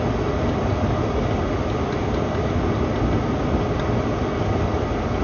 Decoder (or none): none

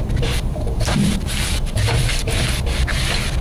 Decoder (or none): vocoder, BigVGAN v2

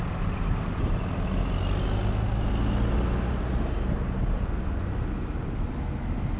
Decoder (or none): none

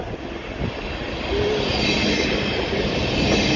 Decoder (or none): none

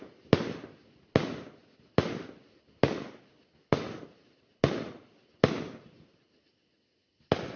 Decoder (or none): none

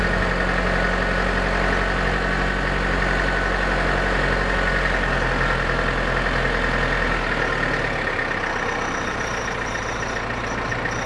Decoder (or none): none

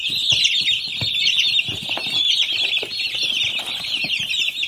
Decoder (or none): none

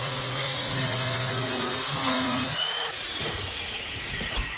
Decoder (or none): vocoder, Vocos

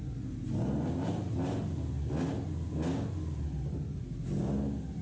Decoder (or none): none